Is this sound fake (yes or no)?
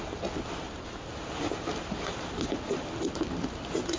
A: no